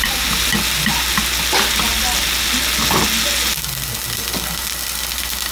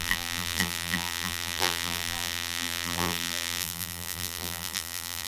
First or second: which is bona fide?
first